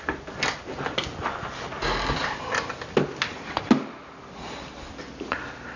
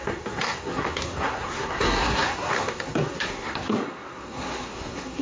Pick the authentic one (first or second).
first